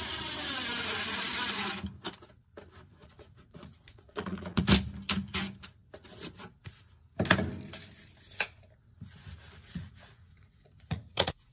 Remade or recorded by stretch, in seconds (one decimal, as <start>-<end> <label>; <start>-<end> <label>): 0.0-3.0 recorded; 3.0-4.6 remade; 4.6-9.6 recorded; 9.6-11.5 remade